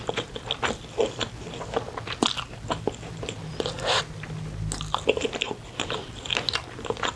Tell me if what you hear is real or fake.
real